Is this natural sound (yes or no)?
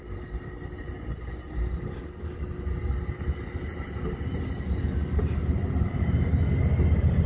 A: yes